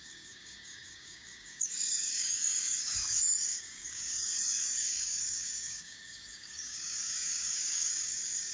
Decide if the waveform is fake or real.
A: fake